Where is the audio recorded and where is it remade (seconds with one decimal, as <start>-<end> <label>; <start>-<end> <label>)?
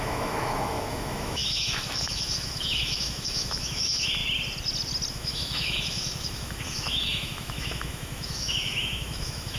0.0-4.2 remade; 4.2-5.1 recorded; 5.1-9.6 remade